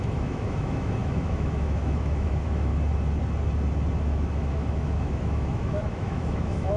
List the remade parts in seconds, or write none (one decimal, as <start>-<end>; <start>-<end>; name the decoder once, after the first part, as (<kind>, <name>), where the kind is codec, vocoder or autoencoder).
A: 0.0-2.7 (autoencoder, DAC-VAE); 4.0-6.8